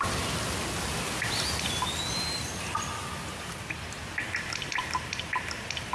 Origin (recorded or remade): recorded